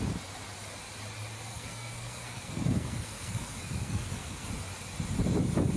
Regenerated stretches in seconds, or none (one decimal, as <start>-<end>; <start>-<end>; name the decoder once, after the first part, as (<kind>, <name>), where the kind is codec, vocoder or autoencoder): 1.5-4.5 (codec, SNAC)